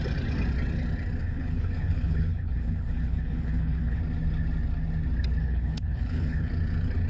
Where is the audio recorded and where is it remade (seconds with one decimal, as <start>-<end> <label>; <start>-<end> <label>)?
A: 0.0-1.2 recorded; 1.2-4.0 remade; 4.0-5.4 recorded; 5.4-6.5 remade; 6.5-7.1 recorded